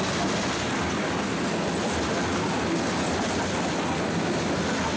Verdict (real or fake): real